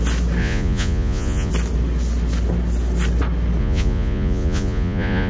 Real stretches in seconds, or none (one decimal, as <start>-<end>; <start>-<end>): 0.0-0.4; 1.5-3.6